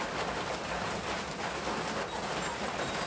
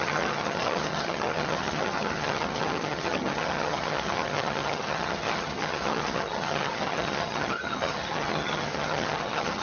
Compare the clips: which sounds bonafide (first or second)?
first